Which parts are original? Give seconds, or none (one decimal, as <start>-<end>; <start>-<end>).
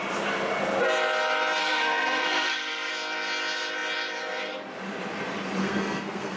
0.0-1.6; 2.9-5.6